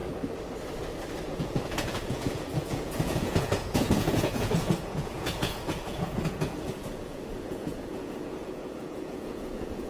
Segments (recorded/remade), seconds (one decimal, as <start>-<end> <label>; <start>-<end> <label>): 0.0-1.2 recorded; 1.2-9.9 remade